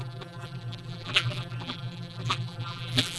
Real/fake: fake